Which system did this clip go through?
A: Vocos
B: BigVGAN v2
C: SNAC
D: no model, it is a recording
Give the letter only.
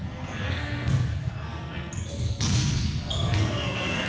C